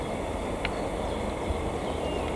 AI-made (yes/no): no